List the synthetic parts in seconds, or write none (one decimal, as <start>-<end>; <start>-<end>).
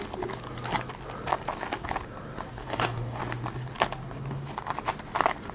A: 2.6-3.2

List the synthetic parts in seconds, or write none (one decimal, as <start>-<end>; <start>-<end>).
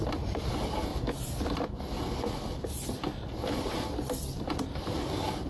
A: none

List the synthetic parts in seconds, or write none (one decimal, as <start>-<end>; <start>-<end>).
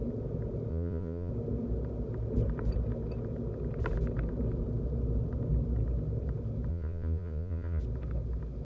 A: 0.7-1.3; 6.7-7.8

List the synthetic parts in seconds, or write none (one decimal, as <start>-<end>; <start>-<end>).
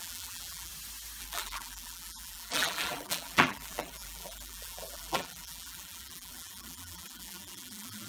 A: 0.0-0.7; 1.2-8.1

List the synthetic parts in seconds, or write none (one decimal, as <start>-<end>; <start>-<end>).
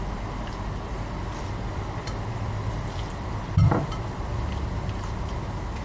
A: 1.3-4.4